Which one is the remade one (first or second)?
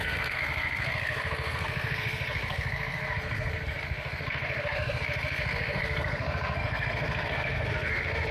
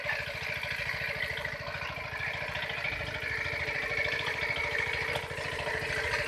first